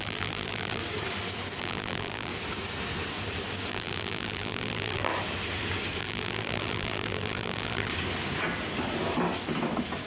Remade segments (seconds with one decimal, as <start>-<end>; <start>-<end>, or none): 0.0-0.8; 1.6-2.3; 3.7-5.1; 6.0-7.9